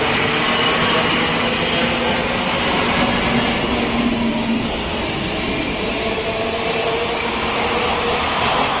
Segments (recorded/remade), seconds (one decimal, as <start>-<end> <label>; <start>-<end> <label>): 0.0-4.4 recorded; 4.4-5.0 remade; 5.0-8.8 recorded